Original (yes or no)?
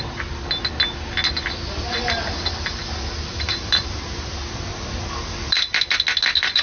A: yes